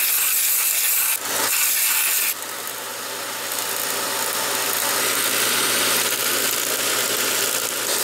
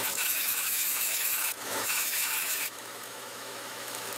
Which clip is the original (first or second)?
first